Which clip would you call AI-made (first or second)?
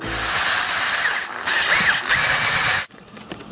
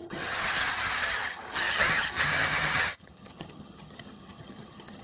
second